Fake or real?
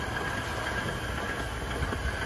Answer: real